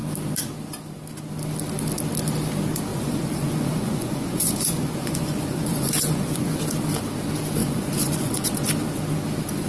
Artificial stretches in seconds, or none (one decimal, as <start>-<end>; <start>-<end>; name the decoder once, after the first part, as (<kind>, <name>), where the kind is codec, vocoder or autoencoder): 2.9-6.6 (vocoder, Vocos); 7.6-8.7